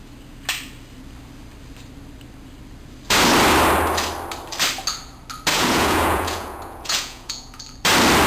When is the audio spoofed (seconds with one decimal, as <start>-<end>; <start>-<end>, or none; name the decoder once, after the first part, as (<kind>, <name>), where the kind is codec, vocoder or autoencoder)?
5.5-7.6 (vocoder, Vocos)